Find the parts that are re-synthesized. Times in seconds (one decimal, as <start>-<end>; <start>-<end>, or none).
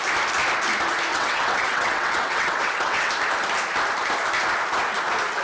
1.1-3.1